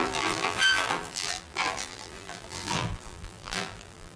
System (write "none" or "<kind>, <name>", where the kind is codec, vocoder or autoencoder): vocoder, BigVGAN v2